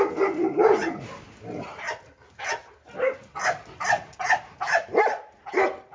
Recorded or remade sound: recorded